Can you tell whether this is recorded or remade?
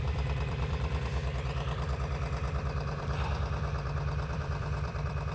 remade